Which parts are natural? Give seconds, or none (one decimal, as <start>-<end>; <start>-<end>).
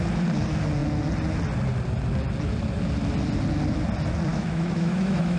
0.0-4.3